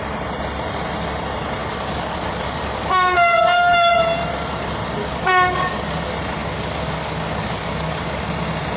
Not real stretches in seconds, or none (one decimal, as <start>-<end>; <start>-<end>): 1.6-4.0; 5.0-6.0; 6.4-8.2